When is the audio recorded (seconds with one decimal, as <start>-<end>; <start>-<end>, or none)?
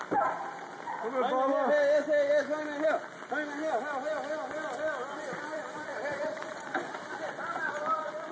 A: 0.0-5.9; 7.1-8.3